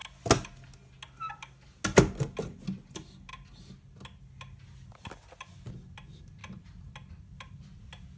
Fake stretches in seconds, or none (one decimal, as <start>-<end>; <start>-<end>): none